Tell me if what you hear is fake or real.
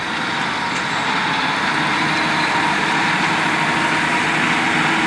real